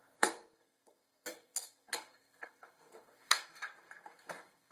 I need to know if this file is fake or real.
fake